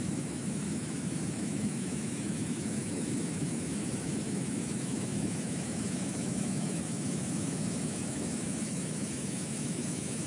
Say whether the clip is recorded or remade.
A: remade